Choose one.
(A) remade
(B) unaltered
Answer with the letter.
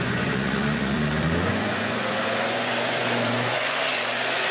A